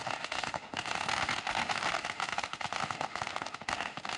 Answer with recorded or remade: remade